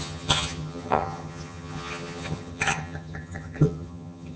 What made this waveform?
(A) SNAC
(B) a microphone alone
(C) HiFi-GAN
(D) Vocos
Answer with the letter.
C